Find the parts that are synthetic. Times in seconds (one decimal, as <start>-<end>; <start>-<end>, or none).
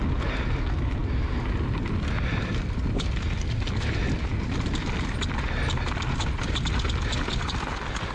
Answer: none